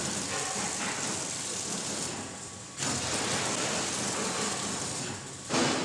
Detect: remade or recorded recorded